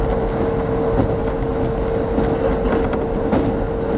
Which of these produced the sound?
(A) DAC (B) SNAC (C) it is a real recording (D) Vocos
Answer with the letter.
C